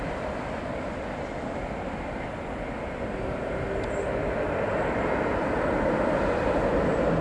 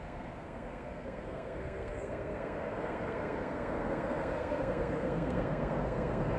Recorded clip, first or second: first